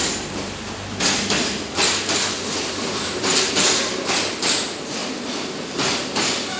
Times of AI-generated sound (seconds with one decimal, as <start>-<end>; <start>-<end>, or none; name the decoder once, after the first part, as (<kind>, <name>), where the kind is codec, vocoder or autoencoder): 2.3-5.0 (vocoder, BigVGAN v2); 6.0-6.6